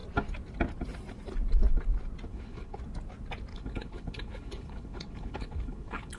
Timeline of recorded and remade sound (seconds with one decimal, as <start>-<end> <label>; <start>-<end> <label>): 0.0-2.3 recorded; 2.3-2.8 remade; 2.8-3.5 recorded; 3.5-6.2 remade